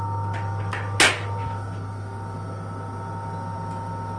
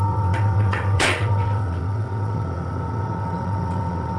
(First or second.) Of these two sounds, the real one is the first